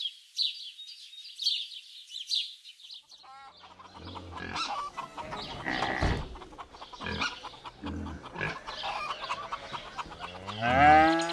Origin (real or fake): real